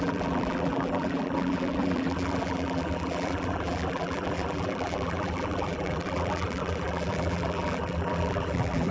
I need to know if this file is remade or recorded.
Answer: remade